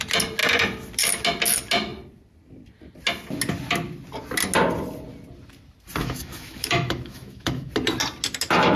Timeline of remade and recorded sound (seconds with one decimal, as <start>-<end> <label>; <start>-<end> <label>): 0.0-6.0 recorded; 6.0-7.7 remade; 7.7-8.8 recorded